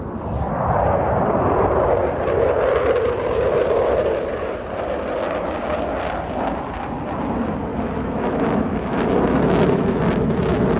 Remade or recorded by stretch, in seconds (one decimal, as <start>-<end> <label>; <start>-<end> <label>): 0.0-7.7 recorded; 7.7-10.0 remade; 10.0-10.8 recorded